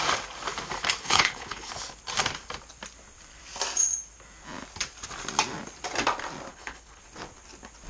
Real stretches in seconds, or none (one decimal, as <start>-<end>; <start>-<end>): 0.0-1.0; 1.7-6.5; 7.0-7.9